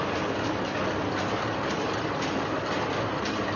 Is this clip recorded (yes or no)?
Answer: yes